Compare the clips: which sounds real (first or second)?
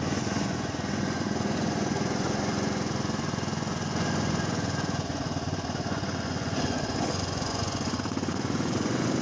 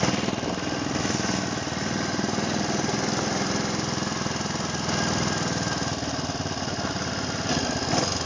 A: second